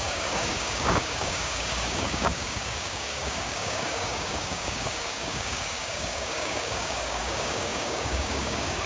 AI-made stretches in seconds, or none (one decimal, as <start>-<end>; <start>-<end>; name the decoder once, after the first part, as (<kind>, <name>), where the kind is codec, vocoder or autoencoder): 0.0-8.9 (codec, DAC)